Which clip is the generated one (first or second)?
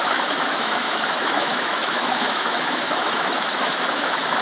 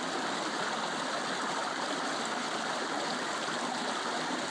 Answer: first